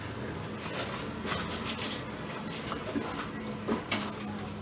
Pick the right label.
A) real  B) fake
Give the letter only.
A